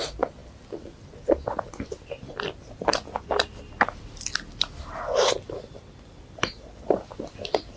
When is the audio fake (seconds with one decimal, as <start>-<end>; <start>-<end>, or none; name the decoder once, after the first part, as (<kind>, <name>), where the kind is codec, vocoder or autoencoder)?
none